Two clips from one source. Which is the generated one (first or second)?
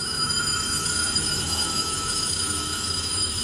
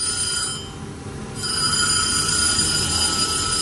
first